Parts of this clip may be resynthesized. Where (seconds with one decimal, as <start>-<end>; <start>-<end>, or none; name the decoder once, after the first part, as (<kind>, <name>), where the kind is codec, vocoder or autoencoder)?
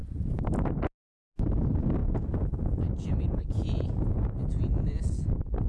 2.0-5.3 (vocoder, Vocos)